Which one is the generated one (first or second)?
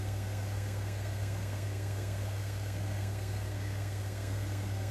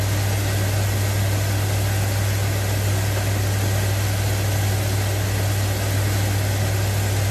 first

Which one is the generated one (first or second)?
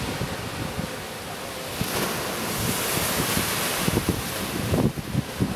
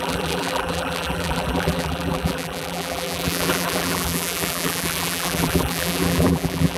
second